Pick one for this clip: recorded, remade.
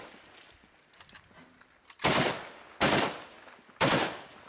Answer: recorded